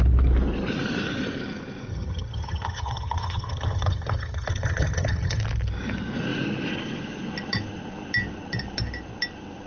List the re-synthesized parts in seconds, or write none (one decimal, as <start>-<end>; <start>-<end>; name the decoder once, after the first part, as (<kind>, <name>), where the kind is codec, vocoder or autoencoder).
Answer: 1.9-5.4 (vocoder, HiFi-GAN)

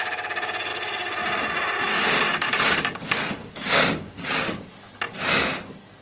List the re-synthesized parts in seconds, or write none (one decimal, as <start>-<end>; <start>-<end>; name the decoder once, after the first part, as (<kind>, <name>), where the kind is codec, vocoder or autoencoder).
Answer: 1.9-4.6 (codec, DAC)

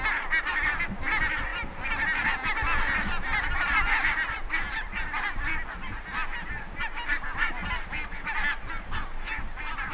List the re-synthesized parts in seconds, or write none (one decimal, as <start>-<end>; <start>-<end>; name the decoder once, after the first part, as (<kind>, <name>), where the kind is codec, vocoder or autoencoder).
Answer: none

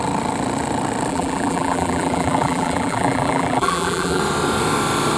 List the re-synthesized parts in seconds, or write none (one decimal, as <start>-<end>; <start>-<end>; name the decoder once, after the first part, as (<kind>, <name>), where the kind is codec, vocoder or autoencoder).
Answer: 1.1-4.2 (vocoder, BigVGAN v2)

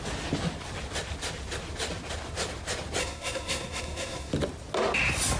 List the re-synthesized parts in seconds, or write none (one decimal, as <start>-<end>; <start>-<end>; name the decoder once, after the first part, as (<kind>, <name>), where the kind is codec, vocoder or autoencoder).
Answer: 3.0-4.3 (codec, SNAC)

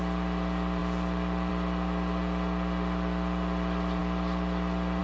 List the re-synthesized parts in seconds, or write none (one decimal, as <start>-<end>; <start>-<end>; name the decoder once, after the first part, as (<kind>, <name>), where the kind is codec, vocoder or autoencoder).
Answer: none